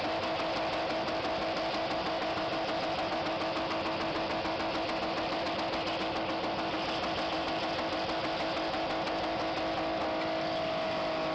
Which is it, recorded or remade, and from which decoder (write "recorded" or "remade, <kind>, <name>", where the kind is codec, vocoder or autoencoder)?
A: recorded